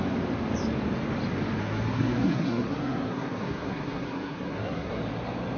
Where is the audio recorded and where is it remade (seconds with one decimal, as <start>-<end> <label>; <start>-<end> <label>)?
0.0-1.6 recorded; 1.6-5.0 remade; 5.0-5.6 recorded